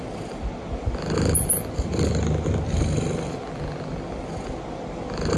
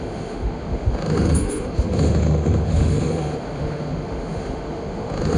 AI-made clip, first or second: second